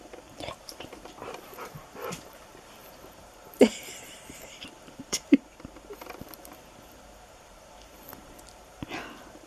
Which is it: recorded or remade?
remade